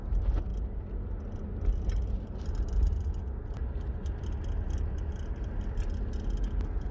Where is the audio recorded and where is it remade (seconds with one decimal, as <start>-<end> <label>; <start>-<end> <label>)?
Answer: 0.0-6.9 recorded

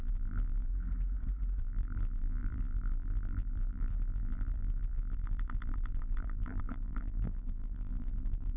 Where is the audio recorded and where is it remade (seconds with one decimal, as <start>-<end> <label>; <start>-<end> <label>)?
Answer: 0.0-0.7 remade; 0.7-1.6 recorded; 1.6-8.6 remade

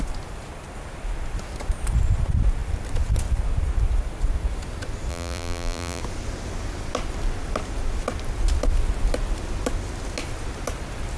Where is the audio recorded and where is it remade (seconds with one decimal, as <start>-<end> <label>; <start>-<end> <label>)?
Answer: 0.0-5.1 recorded; 5.1-6.0 remade; 6.0-11.2 recorded

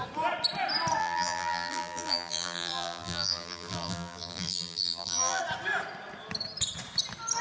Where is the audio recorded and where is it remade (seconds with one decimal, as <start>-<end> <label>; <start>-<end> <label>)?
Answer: 0.0-1.0 recorded; 1.0-5.4 remade; 5.4-7.4 recorded

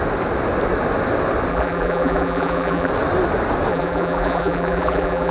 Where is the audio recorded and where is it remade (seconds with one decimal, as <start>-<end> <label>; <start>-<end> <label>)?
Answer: 0.0-1.5 recorded; 1.5-2.9 remade; 2.9-3.7 recorded; 3.7-5.3 remade